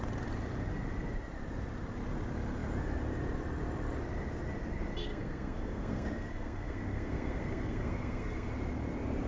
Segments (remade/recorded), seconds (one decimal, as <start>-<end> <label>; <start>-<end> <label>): 0.0-5.1 recorded; 5.1-8.5 remade; 8.5-9.3 recorded